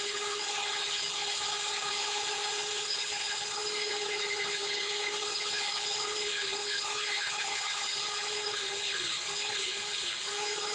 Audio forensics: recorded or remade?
remade